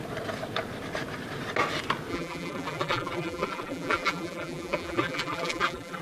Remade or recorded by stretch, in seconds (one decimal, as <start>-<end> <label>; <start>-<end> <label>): 0.0-2.1 recorded; 2.1-6.0 remade